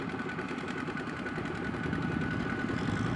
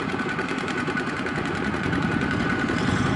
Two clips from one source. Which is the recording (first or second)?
first